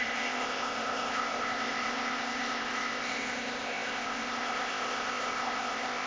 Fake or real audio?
fake